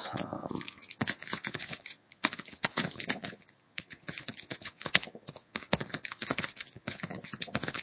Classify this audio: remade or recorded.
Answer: remade